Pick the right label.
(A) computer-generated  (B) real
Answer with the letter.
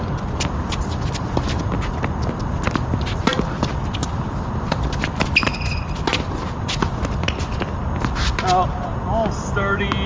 B